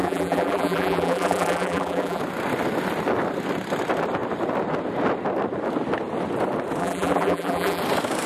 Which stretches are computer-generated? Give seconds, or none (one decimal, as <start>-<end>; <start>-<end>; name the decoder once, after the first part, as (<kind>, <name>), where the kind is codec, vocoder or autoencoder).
0.0-2.2 (vocoder, BigVGAN v2); 6.8-7.8